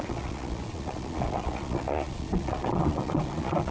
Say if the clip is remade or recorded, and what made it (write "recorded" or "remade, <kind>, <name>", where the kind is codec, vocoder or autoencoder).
remade, vocoder, Vocos